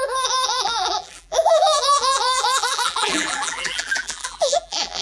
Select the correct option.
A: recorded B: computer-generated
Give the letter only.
B